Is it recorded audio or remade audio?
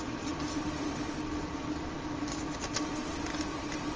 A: recorded